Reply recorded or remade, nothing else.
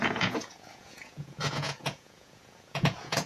remade